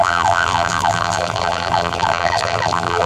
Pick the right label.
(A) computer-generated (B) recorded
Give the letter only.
A